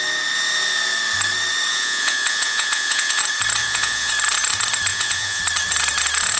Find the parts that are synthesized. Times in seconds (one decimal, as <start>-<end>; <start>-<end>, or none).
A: 1.7-3.2; 3.6-4.1; 4.9-5.4